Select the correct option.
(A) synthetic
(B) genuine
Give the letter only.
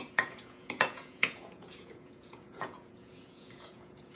A